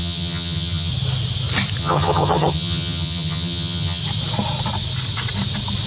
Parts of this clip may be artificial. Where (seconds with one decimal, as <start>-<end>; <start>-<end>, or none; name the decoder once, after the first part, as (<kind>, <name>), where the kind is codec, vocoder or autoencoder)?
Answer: 0.0-0.9 (vocoder, HiFi-GAN); 1.8-4.0

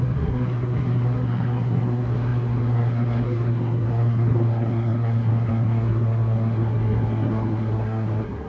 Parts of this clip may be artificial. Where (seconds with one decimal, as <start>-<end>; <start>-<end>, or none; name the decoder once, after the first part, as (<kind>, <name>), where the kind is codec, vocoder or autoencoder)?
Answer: 0.0-8.5 (codec, SNAC)

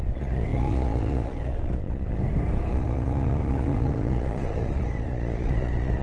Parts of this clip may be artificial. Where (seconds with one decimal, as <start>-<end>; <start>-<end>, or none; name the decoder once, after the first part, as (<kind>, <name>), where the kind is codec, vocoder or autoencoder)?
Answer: 0.0-2.2 (vocoder, Vocos); 2.7-6.0

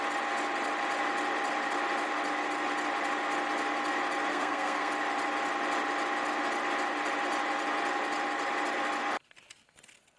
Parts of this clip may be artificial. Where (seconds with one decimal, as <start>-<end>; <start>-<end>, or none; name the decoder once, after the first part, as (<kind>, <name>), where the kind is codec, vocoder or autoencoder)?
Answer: 4.3-4.9 (codec, SNAC)

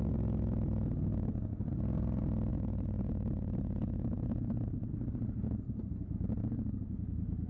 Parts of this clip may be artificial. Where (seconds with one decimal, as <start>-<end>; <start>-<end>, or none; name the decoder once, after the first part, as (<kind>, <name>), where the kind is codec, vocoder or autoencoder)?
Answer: 2.5-5.9 (vocoder, BigVGAN v2)

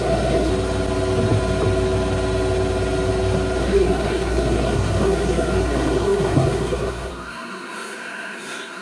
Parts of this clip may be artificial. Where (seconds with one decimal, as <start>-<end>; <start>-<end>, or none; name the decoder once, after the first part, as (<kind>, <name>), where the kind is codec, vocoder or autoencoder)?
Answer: 0.0-0.5 (codec, SNAC); 3.6-8.8